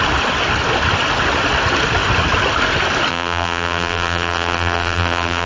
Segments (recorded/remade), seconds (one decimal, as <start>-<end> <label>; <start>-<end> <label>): 0.0-3.1 recorded; 3.1-5.5 remade